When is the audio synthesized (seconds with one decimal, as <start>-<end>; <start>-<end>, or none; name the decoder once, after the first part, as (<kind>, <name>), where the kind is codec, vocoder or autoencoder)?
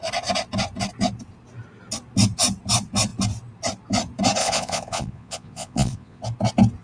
4.4-6.2 (vocoder, Vocos)